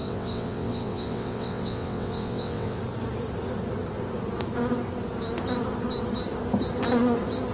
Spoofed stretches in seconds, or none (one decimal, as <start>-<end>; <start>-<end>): 0.0-2.8